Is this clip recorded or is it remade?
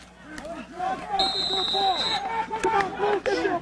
recorded